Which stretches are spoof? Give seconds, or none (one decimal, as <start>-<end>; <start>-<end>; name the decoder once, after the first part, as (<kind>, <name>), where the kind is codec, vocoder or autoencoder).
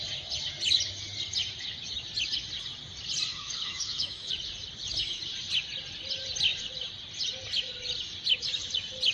3.3-4.3 (autoencoder, DAC-VAE)